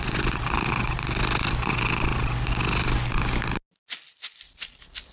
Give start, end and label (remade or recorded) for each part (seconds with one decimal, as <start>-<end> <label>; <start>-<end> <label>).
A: 0.0-5.1 recorded